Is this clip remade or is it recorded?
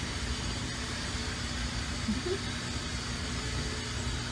recorded